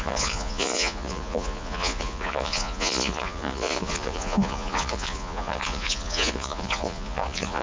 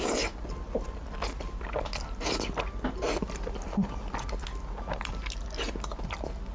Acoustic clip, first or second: second